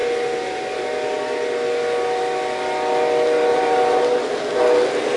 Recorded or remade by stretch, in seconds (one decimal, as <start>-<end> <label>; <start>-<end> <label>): 0.0-3.5 recorded; 3.5-4.0 remade; 4.0-5.2 recorded